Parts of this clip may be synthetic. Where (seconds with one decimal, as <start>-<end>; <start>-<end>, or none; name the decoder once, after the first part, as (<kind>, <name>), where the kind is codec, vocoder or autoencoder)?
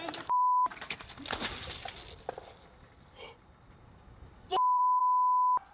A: 0.0-0.7 (vocoder, BigVGAN v2); 2.8-5.0